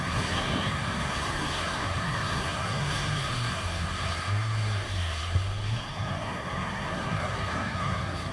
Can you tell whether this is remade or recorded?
remade